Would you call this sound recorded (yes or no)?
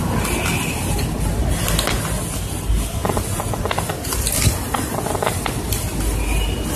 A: yes